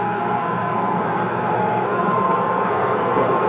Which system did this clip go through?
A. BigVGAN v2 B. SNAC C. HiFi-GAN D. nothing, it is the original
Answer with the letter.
B